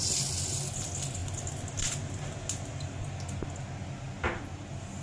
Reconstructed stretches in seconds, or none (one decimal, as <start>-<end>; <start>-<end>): none